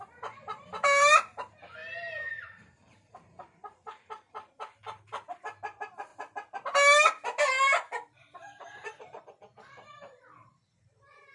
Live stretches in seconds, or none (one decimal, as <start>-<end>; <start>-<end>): 1.8-2.3; 6.1-8.2